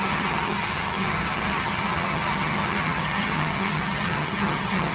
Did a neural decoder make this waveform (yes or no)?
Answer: yes